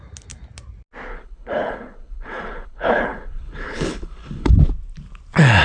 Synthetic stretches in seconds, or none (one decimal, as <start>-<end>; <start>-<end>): 1.1-4.5